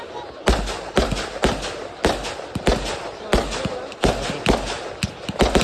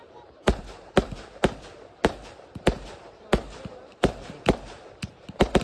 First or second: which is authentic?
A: first